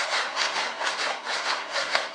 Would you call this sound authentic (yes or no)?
no